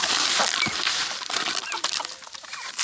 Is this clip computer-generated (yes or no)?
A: yes